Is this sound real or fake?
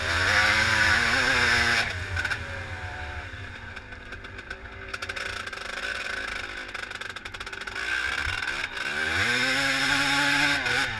real